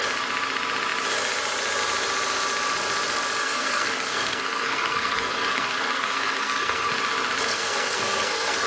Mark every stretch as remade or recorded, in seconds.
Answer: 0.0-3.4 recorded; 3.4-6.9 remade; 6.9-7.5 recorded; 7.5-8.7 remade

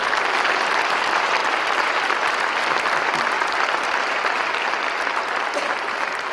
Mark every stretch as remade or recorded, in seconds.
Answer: 0.0-6.3 recorded

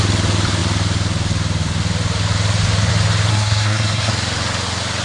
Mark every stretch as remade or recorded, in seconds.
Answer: 0.0-3.3 recorded; 3.3-4.1 remade; 4.1-5.0 recorded

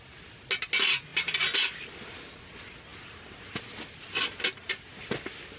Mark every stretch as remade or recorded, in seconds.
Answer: 0.0-5.6 recorded

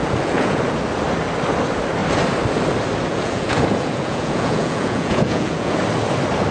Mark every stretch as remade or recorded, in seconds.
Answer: 0.0-0.6 remade; 0.6-3.1 recorded; 3.1-5.8 remade; 5.8-6.5 recorded

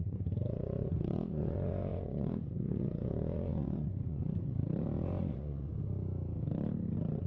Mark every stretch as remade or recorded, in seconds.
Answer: 0.0-4.6 remade; 4.6-5.2 recorded; 5.2-5.7 remade; 5.7-7.3 recorded

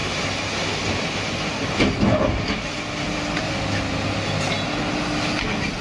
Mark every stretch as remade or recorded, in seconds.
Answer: 0.0-5.8 recorded

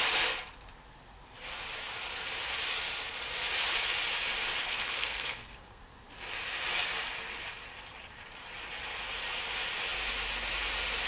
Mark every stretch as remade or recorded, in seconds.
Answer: 0.0-4.6 recorded; 4.6-5.8 remade; 5.8-11.1 recorded